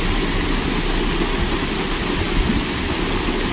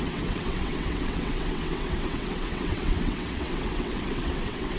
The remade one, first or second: second